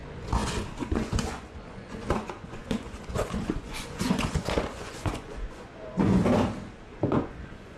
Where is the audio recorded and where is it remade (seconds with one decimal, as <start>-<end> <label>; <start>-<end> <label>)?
0.0-6.2 remade; 6.2-6.9 recorded; 6.9-7.8 remade